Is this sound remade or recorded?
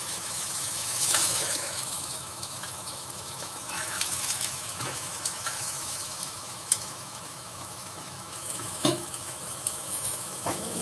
remade